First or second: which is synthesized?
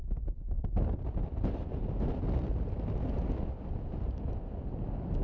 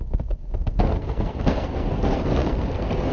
second